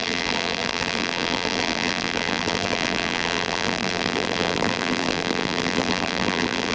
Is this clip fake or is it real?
fake